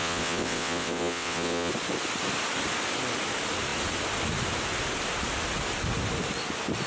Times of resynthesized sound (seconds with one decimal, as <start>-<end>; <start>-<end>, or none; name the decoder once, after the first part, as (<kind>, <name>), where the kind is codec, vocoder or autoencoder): 0.0-1.7 (vocoder, WaveNeXt)